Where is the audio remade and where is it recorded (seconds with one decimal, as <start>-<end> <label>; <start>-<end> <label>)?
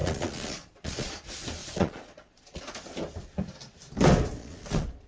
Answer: 0.0-1.1 remade; 1.1-1.6 recorded; 1.6-2.6 remade; 2.6-4.4 recorded; 4.4-5.1 remade